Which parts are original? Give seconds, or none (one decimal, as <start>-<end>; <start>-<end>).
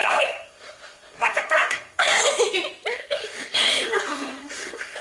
2.3-2.9